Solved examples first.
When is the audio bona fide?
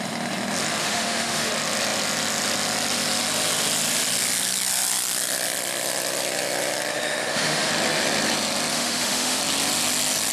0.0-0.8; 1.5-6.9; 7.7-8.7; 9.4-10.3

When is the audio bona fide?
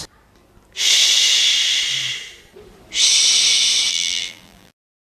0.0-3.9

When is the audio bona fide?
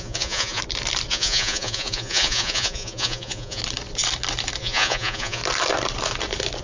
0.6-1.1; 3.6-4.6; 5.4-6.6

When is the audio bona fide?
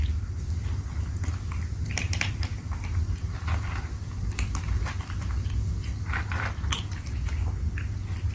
0.0-8.3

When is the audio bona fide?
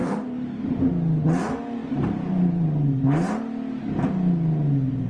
0.8-1.8; 3.0-5.1